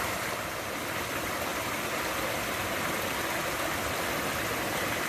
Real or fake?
real